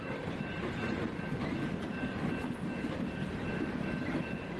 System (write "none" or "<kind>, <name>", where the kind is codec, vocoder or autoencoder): none